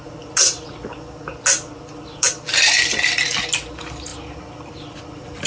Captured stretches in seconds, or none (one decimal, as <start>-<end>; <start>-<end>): 0.0-5.5